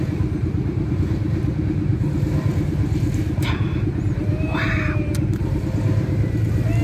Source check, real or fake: fake